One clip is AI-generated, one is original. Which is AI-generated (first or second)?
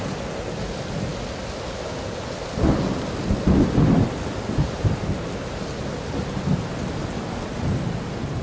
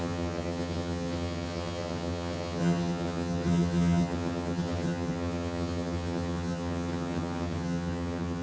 second